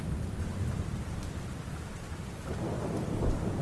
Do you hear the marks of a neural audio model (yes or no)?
no